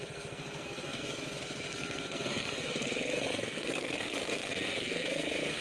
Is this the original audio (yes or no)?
no